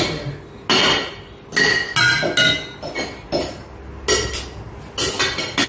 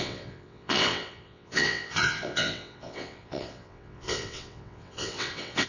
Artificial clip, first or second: second